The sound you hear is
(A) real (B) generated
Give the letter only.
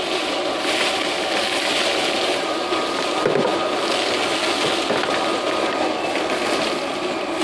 A